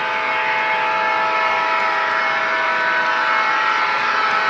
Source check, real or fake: real